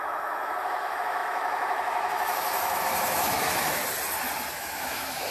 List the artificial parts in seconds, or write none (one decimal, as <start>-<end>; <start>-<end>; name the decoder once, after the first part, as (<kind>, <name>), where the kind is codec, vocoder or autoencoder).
0.0-3.8 (autoencoder, DAC-VAE); 4.5-5.3